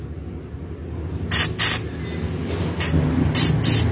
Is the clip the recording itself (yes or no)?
yes